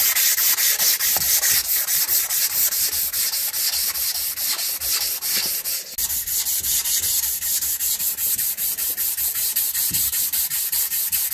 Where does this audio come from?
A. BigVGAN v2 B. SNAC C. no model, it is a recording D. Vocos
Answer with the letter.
C